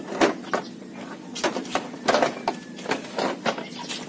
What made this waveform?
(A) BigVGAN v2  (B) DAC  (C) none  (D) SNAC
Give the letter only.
C